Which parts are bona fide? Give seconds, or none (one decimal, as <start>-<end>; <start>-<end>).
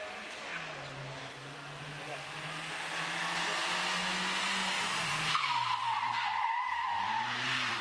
0.0-4.6